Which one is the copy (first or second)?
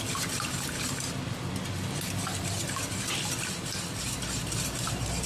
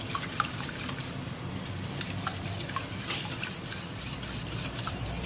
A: second